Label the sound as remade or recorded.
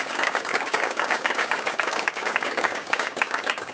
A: remade